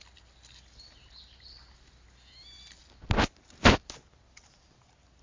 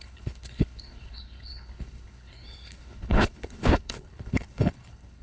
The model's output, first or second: second